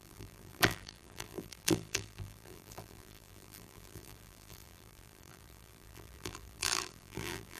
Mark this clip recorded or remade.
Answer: remade